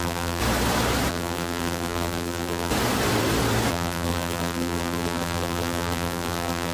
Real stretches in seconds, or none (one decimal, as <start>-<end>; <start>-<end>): 0.4-1.1; 2.7-3.7